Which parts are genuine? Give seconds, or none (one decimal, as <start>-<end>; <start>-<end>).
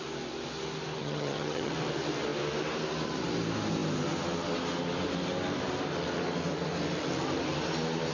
0.0-1.0; 1.7-8.1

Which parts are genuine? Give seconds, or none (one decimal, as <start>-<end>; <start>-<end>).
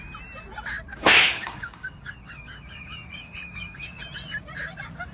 0.0-0.9; 4.0-5.1